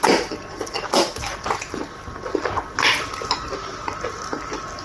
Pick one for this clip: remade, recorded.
recorded